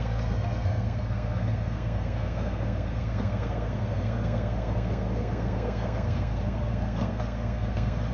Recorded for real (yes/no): no